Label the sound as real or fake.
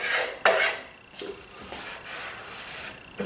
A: real